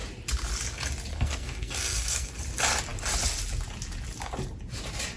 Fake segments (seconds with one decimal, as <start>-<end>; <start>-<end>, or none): 1.1-2.3